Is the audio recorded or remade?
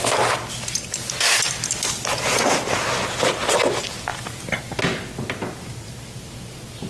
recorded